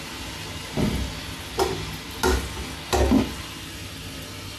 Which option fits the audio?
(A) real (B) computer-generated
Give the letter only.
A